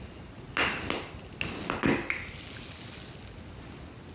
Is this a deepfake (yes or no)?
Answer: no